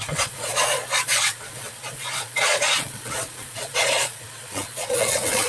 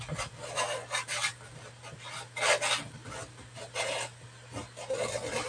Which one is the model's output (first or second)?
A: first